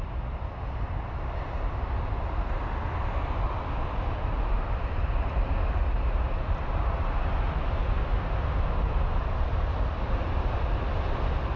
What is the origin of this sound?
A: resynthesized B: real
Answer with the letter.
B